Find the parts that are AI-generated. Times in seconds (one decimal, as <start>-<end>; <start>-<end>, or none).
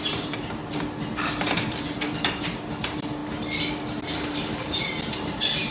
0.0-0.6; 1.2-3.2; 4.0-5.7